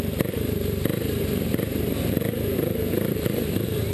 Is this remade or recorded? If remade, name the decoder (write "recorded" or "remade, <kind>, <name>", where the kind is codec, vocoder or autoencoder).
remade, vocoder, BigVGAN v2